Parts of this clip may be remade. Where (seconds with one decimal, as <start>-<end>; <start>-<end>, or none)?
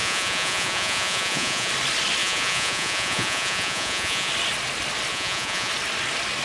0.0-1.7; 2.2-4.3; 5.1-5.7